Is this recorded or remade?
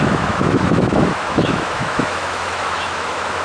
remade